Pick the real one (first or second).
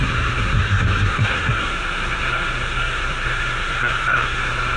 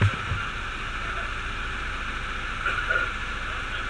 second